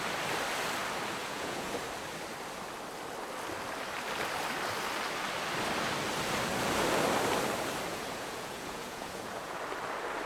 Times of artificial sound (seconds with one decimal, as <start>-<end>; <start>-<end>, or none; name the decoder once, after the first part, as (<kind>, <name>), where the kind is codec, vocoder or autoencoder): 1.2-1.7 (vocoder, Vocos); 7.9-9.6